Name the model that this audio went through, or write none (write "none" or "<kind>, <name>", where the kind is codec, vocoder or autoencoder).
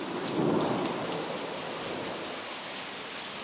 none